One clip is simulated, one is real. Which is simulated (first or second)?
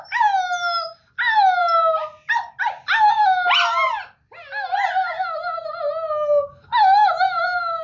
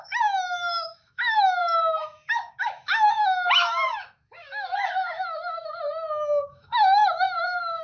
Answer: second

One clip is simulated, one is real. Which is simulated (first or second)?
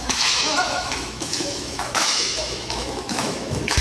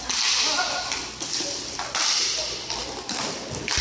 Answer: first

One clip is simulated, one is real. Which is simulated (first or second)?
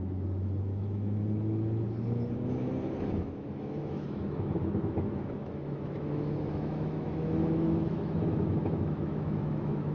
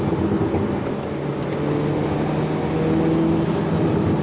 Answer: first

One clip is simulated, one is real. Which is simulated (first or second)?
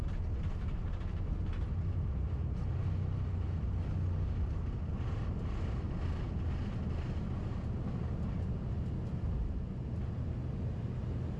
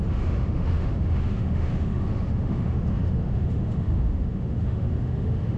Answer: second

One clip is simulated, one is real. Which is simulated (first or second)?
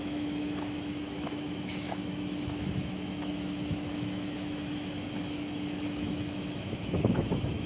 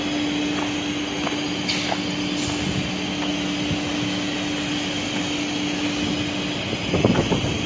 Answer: first